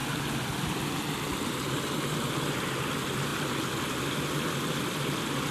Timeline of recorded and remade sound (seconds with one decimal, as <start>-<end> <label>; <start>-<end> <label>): 0.0-5.5 recorded